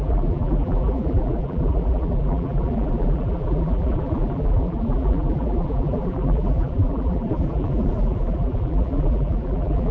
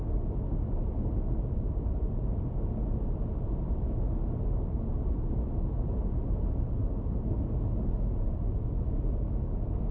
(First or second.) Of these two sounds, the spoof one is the first